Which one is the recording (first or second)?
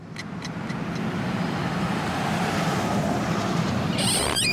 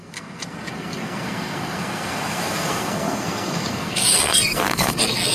first